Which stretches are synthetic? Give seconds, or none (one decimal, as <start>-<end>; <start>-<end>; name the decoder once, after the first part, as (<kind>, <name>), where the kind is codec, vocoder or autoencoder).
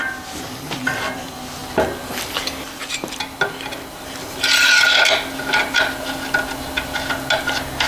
none